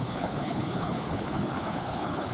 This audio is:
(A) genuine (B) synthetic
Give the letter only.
B